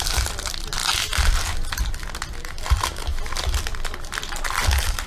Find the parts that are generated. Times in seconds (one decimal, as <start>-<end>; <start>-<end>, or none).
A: none